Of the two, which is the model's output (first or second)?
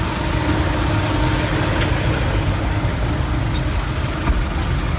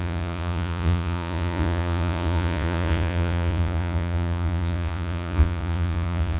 second